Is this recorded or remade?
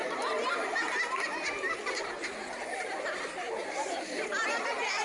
recorded